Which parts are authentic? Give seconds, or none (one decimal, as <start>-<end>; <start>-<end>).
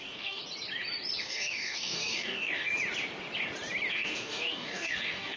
0.4-1.2; 2.7-3.9